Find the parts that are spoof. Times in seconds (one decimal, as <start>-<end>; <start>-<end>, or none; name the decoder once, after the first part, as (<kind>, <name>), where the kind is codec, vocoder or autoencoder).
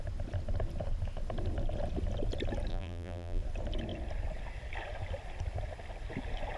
2.7-3.4 (vocoder, BigVGAN v2)